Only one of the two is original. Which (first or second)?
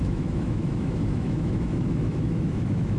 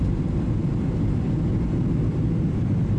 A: second